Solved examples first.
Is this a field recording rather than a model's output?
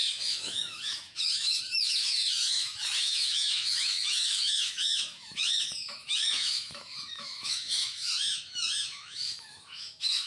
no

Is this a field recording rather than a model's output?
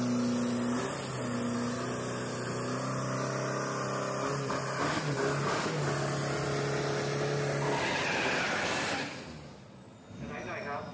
yes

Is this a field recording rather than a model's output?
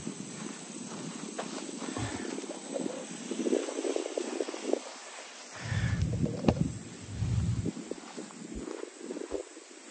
yes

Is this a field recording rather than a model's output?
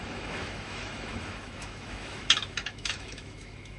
no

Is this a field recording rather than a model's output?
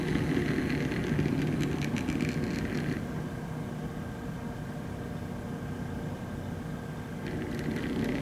yes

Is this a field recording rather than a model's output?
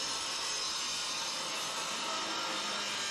yes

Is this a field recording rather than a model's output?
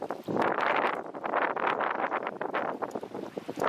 yes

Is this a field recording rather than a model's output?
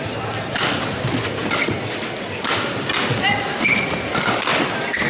yes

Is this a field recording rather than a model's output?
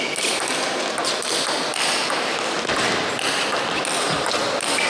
yes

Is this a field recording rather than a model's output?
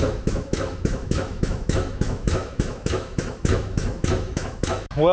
no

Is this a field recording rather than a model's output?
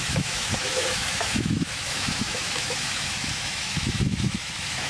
no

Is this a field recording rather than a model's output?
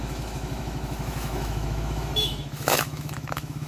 no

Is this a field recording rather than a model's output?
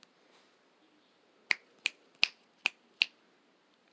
yes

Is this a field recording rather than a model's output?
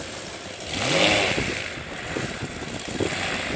yes